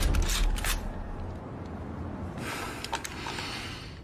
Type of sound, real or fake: real